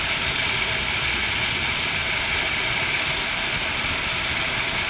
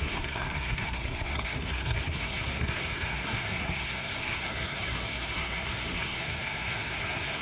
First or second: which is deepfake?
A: second